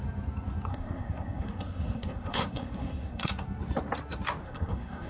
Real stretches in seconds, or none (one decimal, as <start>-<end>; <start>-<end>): 0.0-0.7; 3.3-4.4